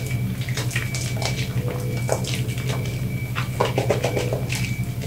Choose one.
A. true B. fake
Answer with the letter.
A